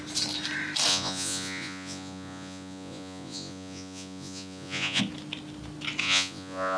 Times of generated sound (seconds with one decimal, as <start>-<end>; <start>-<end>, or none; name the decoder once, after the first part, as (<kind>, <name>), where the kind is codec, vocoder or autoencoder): 0.9-5.0 (vocoder, Vocos); 6.0-6.8